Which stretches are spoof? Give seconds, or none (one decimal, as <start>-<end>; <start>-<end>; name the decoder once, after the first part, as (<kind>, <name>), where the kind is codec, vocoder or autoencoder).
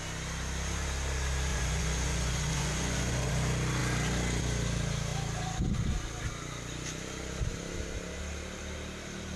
1.5-3.3 (vocoder, Vocos)